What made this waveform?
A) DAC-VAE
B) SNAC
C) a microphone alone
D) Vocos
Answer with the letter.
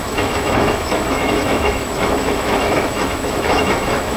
A